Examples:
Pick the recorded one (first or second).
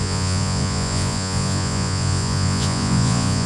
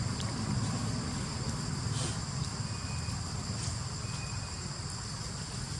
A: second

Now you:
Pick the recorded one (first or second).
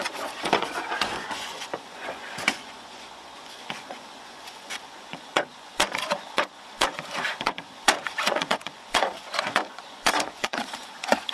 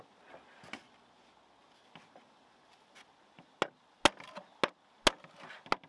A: second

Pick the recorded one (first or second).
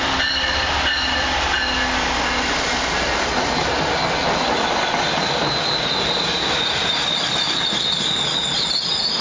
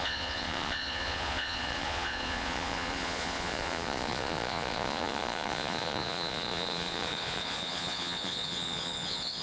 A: first